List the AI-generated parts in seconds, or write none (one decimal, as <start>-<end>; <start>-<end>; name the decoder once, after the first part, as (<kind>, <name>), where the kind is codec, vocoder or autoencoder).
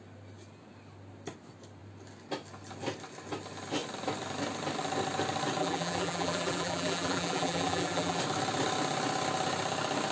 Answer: 5.6-8.2 (vocoder, BigVGAN v2)